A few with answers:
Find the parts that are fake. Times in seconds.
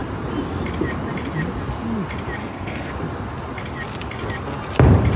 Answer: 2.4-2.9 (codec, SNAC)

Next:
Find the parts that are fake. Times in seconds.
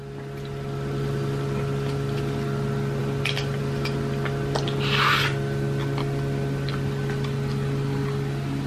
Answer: none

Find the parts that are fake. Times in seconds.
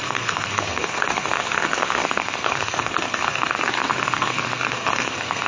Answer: 0.0-5.5 (codec, SNAC)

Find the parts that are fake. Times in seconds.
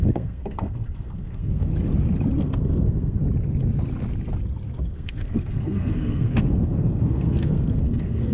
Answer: 0.0-1.7 (codec, SNAC); 2.4-3.2; 4.9-8.3